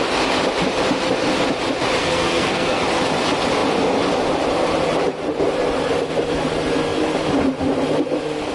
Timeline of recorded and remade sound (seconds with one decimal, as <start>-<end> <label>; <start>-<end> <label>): 0.0-2.0 recorded; 2.0-2.8 remade; 2.8-8.5 recorded